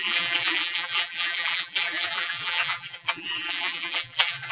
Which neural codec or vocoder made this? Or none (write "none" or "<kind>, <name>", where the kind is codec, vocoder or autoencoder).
vocoder, BigVGAN v2